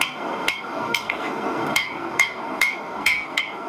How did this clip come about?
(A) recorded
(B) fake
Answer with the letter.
B